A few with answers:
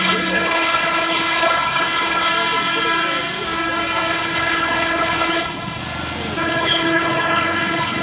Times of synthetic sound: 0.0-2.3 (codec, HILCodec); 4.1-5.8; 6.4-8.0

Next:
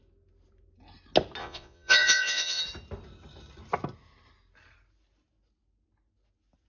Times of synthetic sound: 1.4-2.6 (vocoder, Vocos)

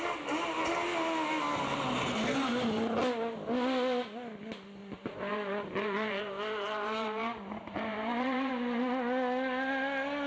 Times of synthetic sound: 4.8-8.5 (vocoder, BigVGAN v2)

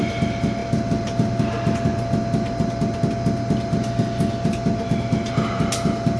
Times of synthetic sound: none

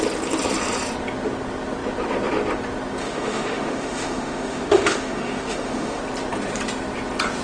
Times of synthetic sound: 3.0-6.0 (autoencoder, DAC-VAE)

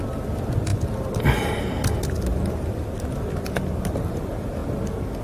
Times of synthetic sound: none

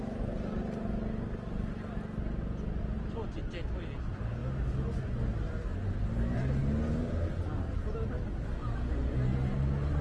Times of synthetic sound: none